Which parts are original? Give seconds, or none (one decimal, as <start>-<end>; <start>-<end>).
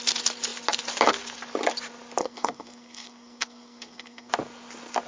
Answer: 0.0-2.2; 4.3-5.1